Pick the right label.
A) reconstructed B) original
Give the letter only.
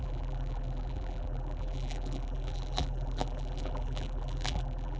A